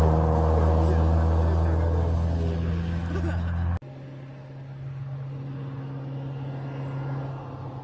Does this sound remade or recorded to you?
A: recorded